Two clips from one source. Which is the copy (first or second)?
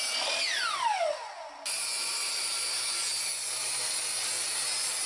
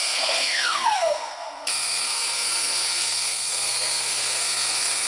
second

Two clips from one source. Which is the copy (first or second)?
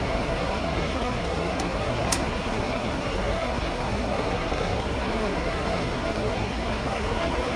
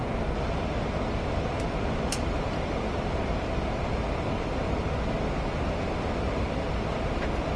first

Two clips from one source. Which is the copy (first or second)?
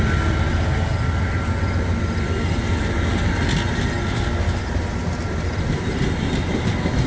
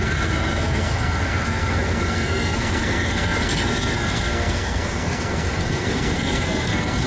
second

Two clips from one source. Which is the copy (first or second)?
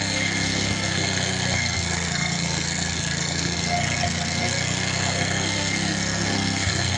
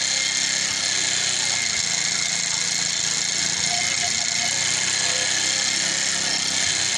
first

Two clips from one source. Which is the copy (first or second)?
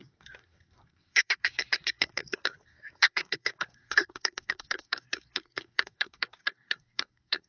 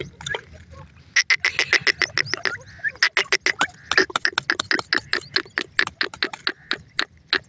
first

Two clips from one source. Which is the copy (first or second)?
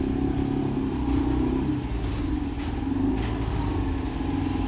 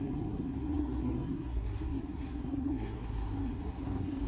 second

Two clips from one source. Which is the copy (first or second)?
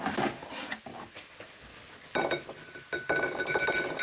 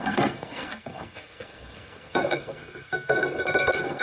second